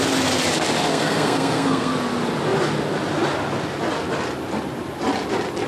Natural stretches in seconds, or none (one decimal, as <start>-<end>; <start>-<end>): 0.0-0.9; 1.9-5.7